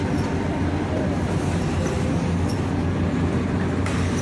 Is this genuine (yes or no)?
yes